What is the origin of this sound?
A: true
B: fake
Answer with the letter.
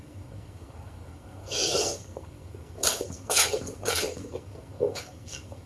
B